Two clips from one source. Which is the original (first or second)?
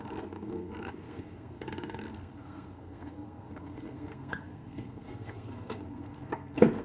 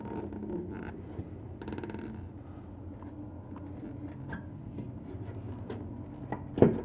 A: second